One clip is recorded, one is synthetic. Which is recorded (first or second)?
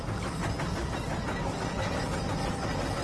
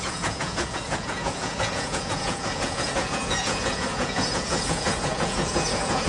first